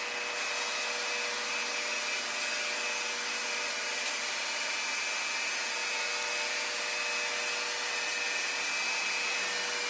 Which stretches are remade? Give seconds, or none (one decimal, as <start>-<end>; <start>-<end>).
none